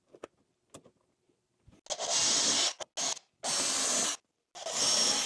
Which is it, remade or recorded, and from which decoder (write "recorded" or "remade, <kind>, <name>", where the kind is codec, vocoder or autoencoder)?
recorded